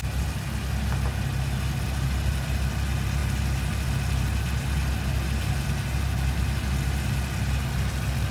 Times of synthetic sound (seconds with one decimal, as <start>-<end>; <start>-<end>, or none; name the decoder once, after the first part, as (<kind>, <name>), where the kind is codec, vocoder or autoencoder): none